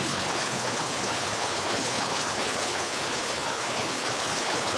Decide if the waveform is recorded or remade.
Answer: remade